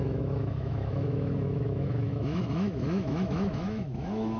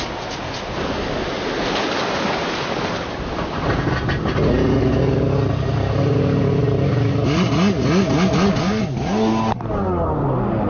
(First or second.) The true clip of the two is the second